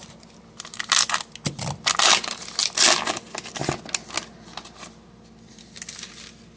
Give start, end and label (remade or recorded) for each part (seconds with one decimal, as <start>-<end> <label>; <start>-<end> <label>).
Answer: 0.0-6.6 recorded